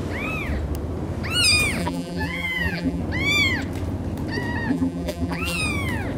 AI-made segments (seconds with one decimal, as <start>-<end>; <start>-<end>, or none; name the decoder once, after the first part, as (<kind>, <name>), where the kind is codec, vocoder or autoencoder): 1.8-3.0 (vocoder, BigVGAN v2); 4.7-5.6